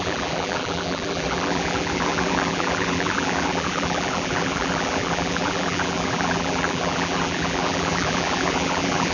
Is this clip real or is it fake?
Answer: fake